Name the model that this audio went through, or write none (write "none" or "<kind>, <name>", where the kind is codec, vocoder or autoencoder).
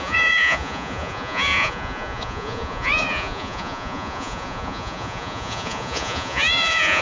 vocoder, Vocos